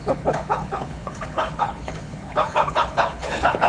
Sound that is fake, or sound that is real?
fake